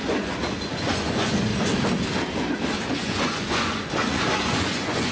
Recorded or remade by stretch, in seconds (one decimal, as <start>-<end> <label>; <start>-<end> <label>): 0.0-1.5 remade; 1.5-2.9 recorded; 2.9-5.1 remade